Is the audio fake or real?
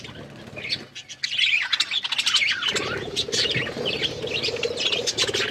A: real